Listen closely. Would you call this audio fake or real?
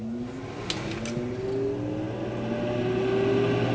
real